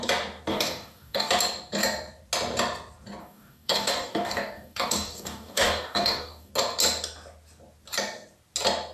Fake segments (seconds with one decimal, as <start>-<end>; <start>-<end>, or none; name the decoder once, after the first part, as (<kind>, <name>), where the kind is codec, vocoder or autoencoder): 0.5-1.3 (codec, DAC); 3.2-6.5